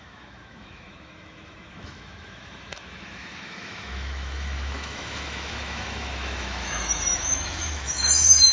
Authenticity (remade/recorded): remade